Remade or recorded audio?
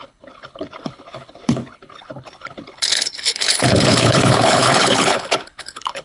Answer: remade